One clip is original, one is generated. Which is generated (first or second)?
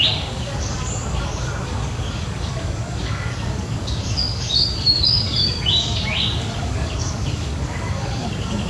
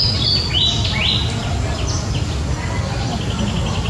first